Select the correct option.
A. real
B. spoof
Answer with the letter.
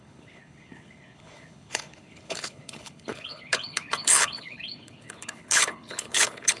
B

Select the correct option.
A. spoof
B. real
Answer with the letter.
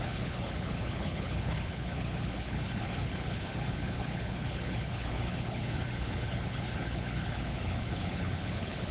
A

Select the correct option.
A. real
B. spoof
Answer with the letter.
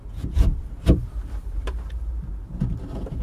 B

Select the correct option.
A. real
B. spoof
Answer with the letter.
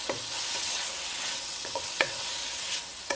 B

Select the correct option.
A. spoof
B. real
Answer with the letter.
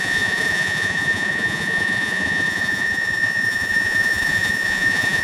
A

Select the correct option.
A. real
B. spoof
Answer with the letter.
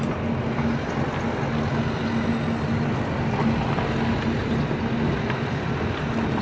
A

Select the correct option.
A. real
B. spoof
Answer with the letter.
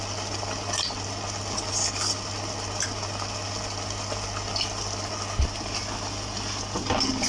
A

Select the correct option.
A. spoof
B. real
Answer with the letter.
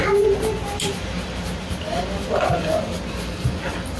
B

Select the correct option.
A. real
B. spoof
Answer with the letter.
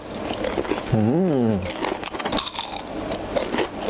A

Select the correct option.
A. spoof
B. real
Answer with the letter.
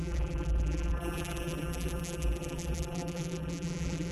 A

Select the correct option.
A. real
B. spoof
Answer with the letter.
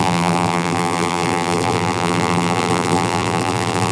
B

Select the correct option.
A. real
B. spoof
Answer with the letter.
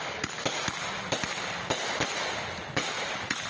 A